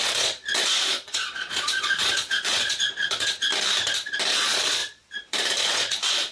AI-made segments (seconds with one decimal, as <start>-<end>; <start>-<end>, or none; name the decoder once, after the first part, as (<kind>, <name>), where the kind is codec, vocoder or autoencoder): 0.0-3.5 (vocoder, Vocos); 4.3-6.3